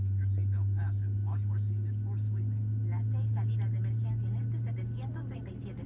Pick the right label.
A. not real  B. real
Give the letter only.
B